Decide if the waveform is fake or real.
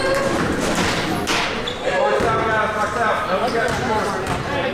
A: real